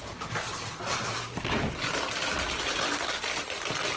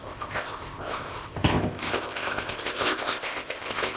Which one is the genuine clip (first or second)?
first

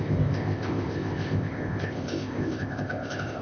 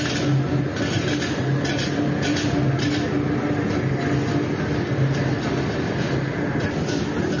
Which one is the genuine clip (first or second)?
second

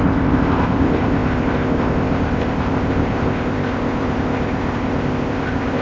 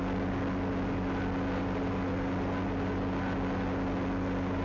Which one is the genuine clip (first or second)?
second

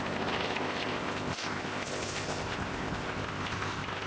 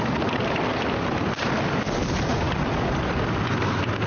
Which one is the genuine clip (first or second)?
second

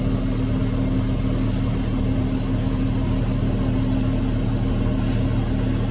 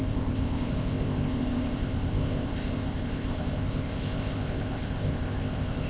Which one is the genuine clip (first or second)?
first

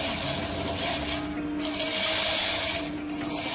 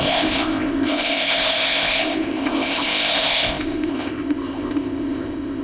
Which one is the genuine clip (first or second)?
first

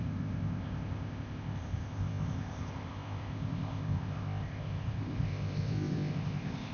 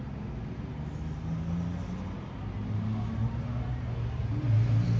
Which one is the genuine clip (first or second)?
second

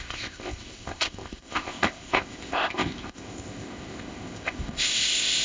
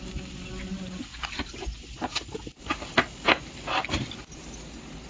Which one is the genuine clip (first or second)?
second